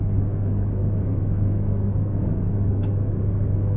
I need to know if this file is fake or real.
fake